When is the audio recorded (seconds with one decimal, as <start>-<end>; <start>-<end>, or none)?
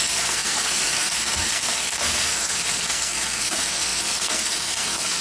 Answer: none